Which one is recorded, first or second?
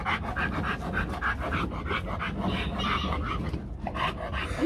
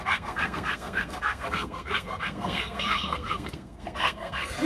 first